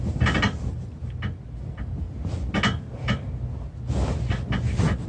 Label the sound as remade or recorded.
recorded